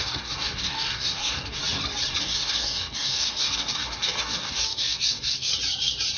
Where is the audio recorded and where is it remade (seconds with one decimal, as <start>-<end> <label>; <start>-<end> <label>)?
0.0-1.6 remade; 1.6-2.2 recorded; 2.2-5.5 remade; 5.5-6.2 recorded